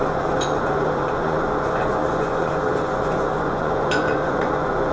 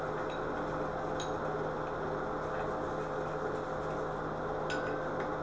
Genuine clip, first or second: second